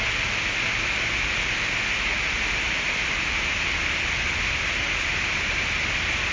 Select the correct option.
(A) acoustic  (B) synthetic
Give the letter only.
A